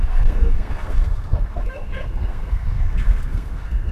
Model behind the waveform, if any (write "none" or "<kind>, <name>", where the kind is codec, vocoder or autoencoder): codec, SNAC